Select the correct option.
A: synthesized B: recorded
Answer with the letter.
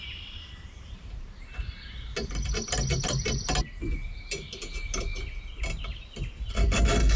B